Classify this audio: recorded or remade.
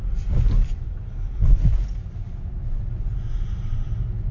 recorded